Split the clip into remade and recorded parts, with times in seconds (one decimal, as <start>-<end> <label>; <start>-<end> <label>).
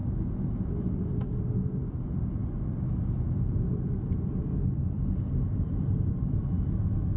0.0-1.8 recorded; 1.8-6.1 remade; 6.1-7.2 recorded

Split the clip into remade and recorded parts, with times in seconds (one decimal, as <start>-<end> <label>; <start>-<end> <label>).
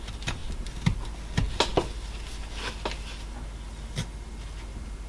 0.0-5.1 recorded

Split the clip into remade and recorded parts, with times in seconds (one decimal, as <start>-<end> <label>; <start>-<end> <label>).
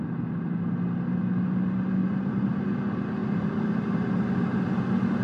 0.0-2.0 recorded; 2.0-2.5 remade; 2.5-3.2 recorded; 3.2-4.8 remade; 4.8-5.2 recorded